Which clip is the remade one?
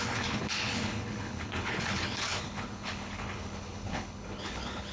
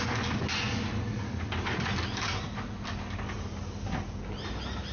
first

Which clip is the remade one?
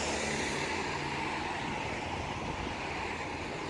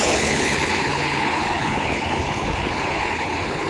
second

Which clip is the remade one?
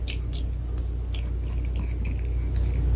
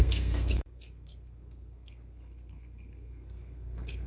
second